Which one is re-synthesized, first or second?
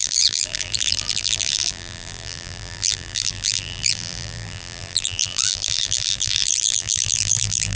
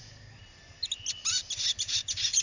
first